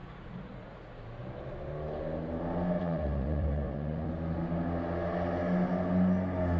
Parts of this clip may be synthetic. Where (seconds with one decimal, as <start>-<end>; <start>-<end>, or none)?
0.0-0.9; 2.8-4.1